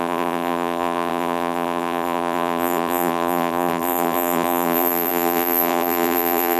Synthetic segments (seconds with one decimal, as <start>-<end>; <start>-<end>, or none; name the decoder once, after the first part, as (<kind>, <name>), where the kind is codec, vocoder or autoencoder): 0.0-6.6 (vocoder, BigVGAN v2)